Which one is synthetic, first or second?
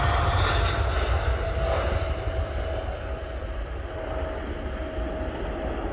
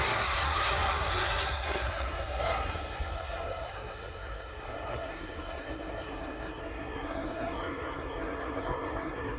second